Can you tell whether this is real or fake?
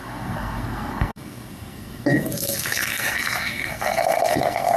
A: fake